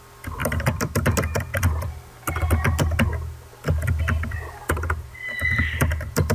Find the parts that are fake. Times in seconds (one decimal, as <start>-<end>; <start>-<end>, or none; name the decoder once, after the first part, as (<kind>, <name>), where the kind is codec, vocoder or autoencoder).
none